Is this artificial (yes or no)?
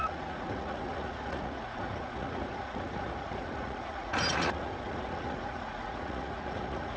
yes